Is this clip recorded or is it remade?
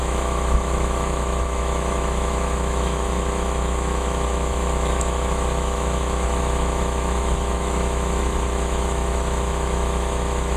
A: remade